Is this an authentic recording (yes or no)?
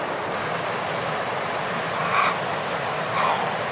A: yes